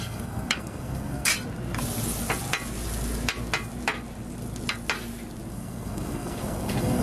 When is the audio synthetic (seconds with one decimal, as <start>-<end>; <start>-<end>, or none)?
0.0-1.3; 5.5-7.0